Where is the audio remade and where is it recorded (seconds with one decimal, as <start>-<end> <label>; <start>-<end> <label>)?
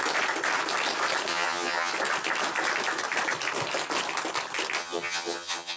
0.0-1.3 recorded; 1.3-1.9 remade; 1.9-4.8 recorded; 4.8-5.8 remade